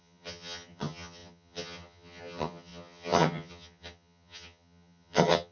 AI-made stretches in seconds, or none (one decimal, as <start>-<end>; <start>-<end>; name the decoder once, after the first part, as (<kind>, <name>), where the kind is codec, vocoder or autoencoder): 0.0-5.5 (vocoder, HiFi-GAN)